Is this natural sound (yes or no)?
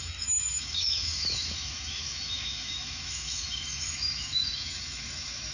no